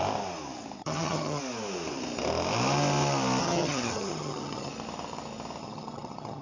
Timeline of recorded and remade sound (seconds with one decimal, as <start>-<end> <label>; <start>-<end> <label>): 0.0-0.8 recorded; 0.8-1.4 remade; 1.4-3.4 recorded; 3.4-4.7 remade; 4.7-5.6 recorded; 5.6-6.4 remade